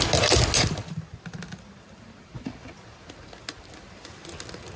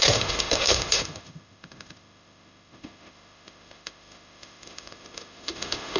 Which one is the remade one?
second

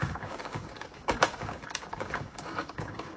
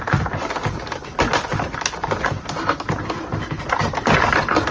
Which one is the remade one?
first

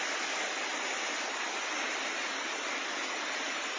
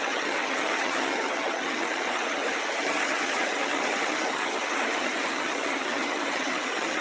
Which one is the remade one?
second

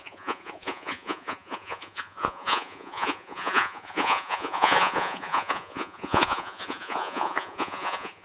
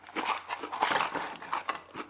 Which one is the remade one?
first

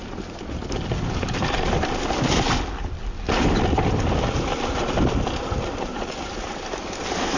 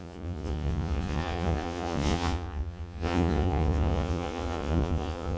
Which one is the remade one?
second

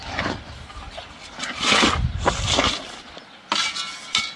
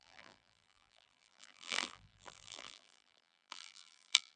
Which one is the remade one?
second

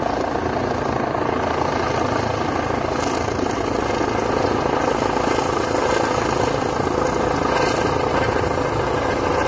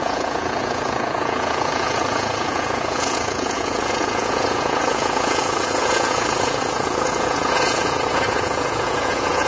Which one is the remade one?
second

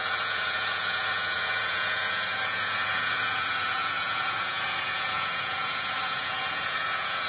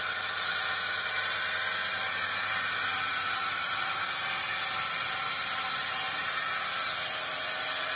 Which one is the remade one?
first